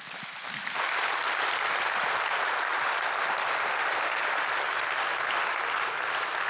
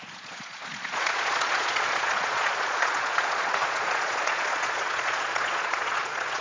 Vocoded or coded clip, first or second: second